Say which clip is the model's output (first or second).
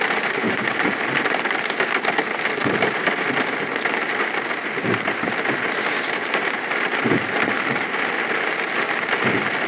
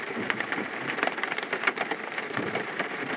second